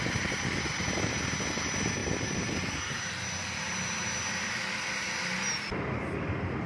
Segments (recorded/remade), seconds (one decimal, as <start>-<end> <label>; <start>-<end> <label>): 0.0-6.7 recorded